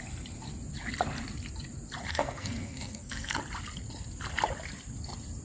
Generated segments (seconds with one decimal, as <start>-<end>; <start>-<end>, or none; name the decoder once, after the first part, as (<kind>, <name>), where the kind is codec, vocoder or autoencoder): 2.1-3.4 (codec, SNAC)